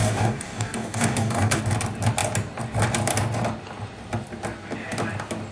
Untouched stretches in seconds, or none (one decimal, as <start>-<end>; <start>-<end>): 1.6-5.5